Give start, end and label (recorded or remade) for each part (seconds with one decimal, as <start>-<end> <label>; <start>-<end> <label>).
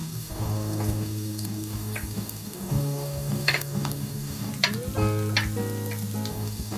0.0-4.5 remade; 4.5-6.3 recorded; 6.3-6.8 remade